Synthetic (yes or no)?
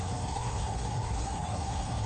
yes